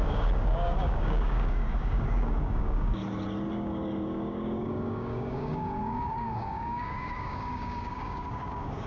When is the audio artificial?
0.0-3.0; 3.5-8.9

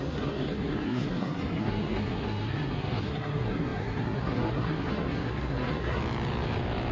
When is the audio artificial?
0.0-6.0